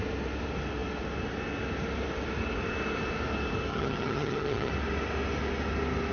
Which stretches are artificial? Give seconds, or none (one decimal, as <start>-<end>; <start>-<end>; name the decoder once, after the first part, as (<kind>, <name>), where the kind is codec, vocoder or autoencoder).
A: 3.7-4.7 (vocoder, HiFi-GAN)